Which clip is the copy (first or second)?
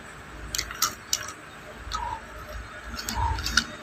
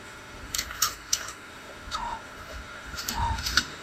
second